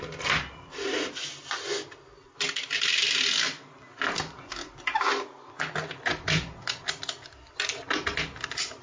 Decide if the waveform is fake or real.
real